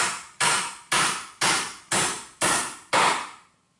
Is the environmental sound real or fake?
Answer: fake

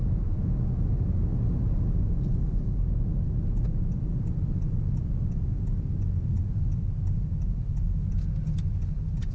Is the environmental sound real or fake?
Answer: real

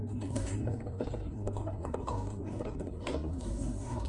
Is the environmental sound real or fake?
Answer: fake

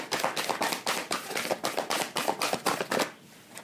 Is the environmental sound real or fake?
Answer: real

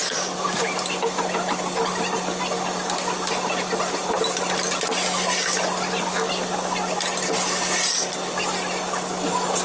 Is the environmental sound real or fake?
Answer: real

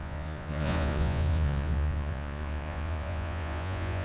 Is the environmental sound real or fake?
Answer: fake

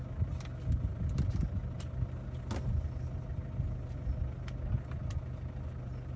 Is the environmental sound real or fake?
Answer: real